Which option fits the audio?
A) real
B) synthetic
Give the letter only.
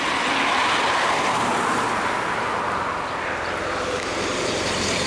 A